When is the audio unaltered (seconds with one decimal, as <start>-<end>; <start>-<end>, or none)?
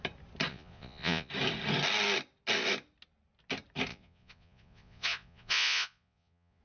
0.0-0.5; 1.3-3.9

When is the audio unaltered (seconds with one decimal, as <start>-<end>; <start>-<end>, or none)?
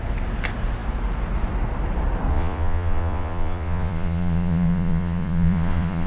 0.0-2.3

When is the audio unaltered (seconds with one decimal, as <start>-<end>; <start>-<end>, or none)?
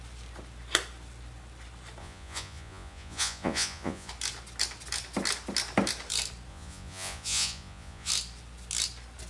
0.0-2.0; 4.1-6.5; 8.1-9.3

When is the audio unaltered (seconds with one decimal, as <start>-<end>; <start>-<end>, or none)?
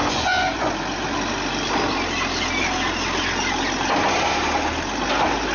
0.7-5.5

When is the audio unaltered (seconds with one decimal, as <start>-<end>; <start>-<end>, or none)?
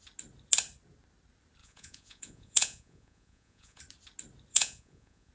0.0-1.6; 3.8-4.5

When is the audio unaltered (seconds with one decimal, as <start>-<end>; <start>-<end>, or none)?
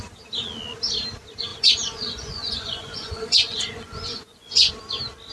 0.0-1.5; 4.7-5.3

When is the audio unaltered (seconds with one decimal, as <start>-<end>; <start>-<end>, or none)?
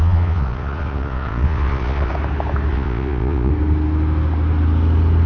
2.1-2.7; 3.5-5.3